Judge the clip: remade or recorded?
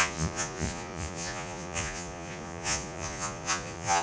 remade